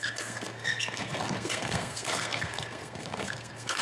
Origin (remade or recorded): remade